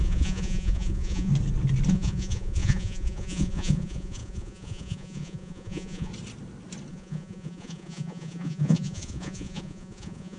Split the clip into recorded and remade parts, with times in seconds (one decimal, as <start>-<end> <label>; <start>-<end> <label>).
0.0-1.3 remade; 1.3-1.9 recorded; 1.9-6.1 remade; 6.1-6.9 recorded; 6.9-10.4 remade